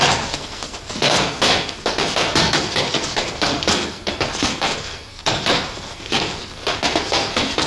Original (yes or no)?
no